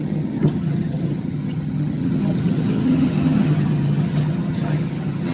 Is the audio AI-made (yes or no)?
yes